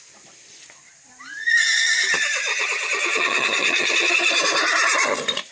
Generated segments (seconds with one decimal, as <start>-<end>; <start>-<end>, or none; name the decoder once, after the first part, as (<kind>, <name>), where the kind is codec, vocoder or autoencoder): 2.5-4.1 (vocoder, HiFi-GAN)